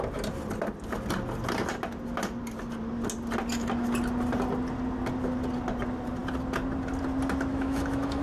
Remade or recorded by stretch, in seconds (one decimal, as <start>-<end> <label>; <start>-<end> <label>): 0.0-7.5 recorded; 7.5-8.2 remade